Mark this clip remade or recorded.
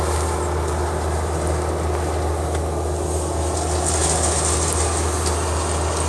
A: recorded